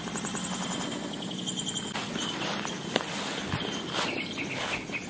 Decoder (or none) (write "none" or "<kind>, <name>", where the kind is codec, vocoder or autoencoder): none